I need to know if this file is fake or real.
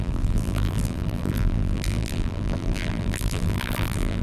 fake